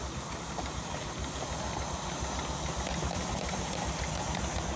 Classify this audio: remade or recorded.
recorded